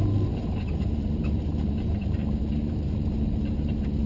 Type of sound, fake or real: fake